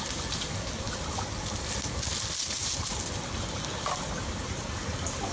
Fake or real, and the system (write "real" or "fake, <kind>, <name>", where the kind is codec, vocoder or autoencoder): real